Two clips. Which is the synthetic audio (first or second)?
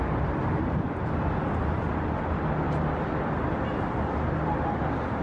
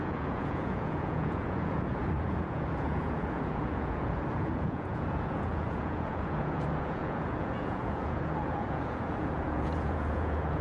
second